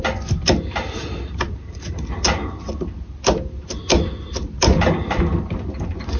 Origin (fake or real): real